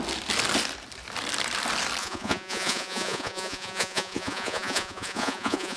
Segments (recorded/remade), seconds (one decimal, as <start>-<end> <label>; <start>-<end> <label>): 0.0-2.0 recorded; 2.0-5.8 remade